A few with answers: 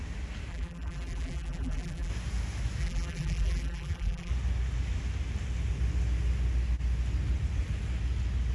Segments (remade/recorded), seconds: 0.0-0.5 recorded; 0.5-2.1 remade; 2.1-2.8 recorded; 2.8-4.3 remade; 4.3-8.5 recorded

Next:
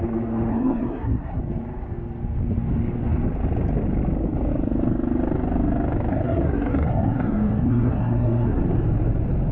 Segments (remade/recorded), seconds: 0.0-0.5 recorded; 0.5-1.4 remade; 1.4-6.1 recorded; 6.1-8.6 remade; 8.6-9.5 recorded

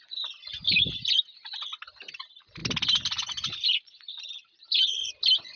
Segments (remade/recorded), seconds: 0.0-5.6 recorded

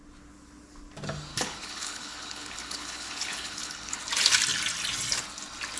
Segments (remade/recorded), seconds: 0.0-1.3 recorded; 1.3-4.0 remade; 4.0-5.8 recorded

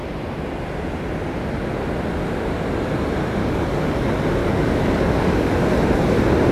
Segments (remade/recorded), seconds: 0.0-3.4 recorded; 3.4-4.0 remade; 4.0-4.4 recorded; 4.4-5.7 remade; 5.7-6.5 recorded